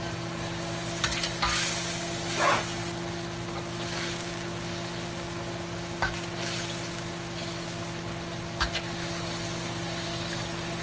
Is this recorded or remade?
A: recorded